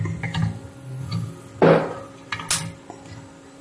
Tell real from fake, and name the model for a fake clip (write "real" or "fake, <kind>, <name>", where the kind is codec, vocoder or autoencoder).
real